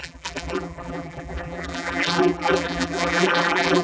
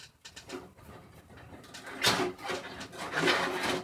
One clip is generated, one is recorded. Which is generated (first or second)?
first